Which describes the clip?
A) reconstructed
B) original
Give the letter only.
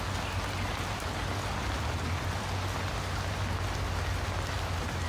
B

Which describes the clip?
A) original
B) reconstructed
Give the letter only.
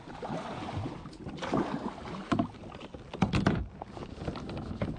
A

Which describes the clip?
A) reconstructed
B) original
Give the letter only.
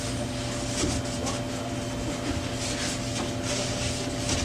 B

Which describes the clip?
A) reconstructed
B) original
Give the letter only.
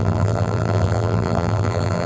A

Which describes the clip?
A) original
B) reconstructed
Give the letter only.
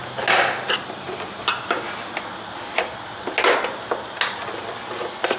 A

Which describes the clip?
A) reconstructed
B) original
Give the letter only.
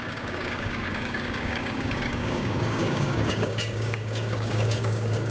A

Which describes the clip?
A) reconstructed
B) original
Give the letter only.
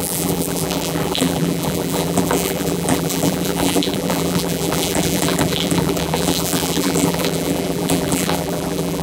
A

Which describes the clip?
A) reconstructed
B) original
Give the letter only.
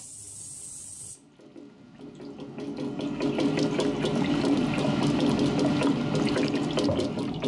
B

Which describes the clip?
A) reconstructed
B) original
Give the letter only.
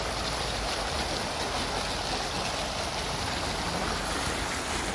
B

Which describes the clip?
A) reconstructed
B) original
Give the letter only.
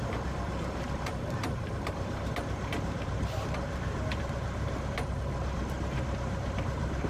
A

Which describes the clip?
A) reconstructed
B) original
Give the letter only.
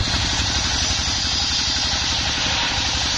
B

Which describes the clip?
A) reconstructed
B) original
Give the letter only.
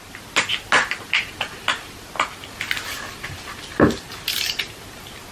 B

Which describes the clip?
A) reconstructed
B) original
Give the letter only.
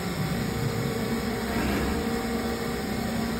A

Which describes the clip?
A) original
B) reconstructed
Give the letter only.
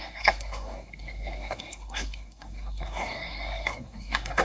B